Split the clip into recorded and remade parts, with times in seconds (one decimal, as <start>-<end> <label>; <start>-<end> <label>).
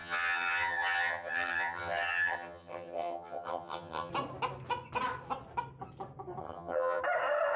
0.0-4.1 remade; 4.1-6.4 recorded; 6.4-7.0 remade; 7.0-7.6 recorded